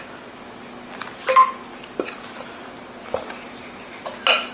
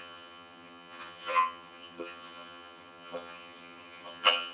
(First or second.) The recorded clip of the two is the first